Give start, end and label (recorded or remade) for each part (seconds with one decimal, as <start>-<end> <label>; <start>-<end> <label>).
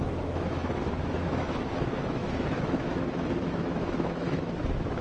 0.0-5.0 remade